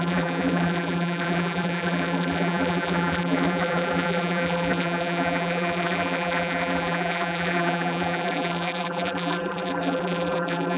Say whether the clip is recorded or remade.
remade